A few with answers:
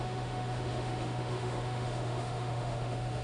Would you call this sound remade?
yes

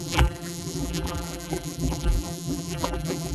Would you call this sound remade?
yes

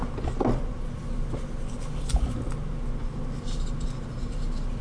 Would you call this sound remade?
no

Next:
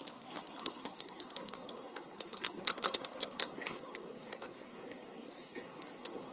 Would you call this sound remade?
yes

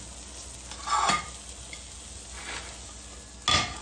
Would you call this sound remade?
no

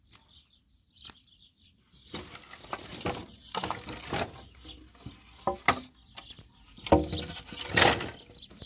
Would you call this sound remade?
no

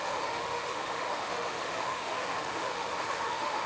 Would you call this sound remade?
yes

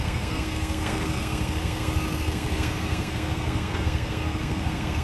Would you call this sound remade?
yes